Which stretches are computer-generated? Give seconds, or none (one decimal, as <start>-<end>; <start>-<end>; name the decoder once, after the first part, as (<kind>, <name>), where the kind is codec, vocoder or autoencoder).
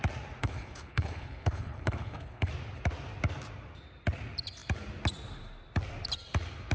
0.4-2.5 (codec, HILCodec)